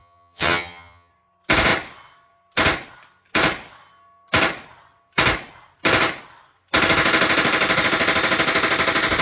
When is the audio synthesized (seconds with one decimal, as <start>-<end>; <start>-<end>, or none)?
0.0-1.1